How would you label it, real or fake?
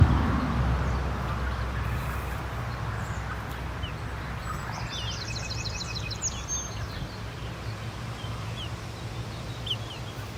real